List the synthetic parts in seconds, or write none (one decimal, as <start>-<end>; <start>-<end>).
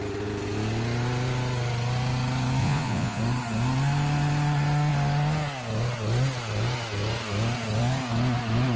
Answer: 2.6-3.2